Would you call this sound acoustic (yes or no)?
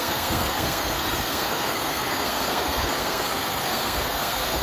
no